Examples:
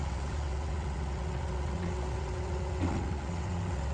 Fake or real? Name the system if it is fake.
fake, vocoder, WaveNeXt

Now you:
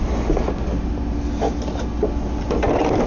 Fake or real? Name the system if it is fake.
real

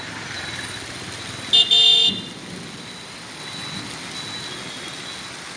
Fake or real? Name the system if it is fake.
real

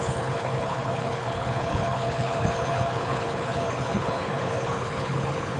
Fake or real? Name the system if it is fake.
fake, codec, HILCodec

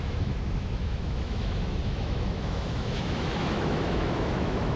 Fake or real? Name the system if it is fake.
fake, autoencoder, DAC-VAE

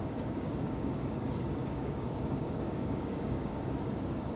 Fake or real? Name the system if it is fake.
fake, codec, DAC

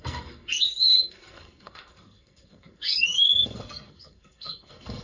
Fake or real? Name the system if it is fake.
fake, codec, SNAC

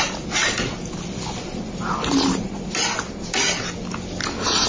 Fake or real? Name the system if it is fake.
real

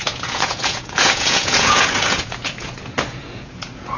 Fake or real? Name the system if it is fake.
fake, vocoder, Vocos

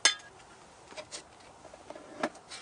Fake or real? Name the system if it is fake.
real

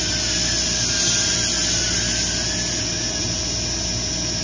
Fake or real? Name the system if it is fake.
real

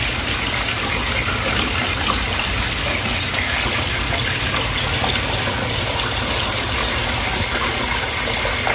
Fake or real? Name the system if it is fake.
real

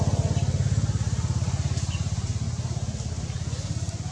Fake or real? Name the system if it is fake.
real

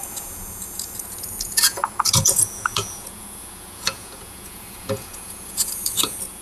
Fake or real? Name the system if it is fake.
fake, vocoder, Vocos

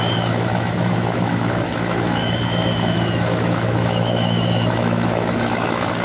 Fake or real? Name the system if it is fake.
fake, autoencoder, DAC-VAE